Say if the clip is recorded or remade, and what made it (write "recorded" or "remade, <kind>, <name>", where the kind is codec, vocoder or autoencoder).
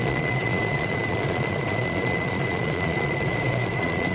remade, vocoder, Vocos